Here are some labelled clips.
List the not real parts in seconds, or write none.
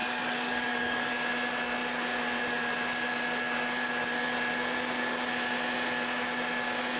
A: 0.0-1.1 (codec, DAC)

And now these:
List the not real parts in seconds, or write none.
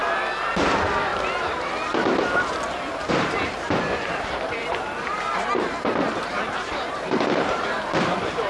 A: 0.5-1.1 (vocoder, BigVGAN v2); 3.1-8.5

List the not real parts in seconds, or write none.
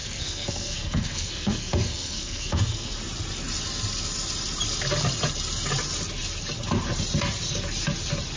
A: 0.0-3.0 (codec, SNAC)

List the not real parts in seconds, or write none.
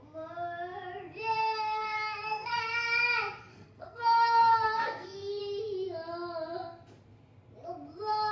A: 1.4-2.6 (codec, SNAC); 3.5-5.4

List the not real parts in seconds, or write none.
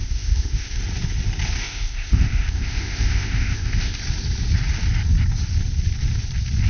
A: 0.0-0.8 (codec, ZipCodec); 1.6-4.0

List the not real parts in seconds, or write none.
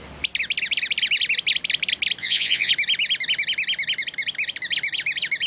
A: 2.2-2.7 (vocoder, Vocos)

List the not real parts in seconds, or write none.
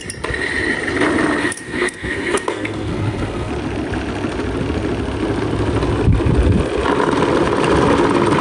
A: 1.4-3.5 (codec, SNAC)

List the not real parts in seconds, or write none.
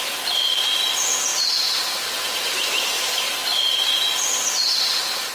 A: 1.3-1.9 (vocoder, BigVGAN v2); 3.5-5.3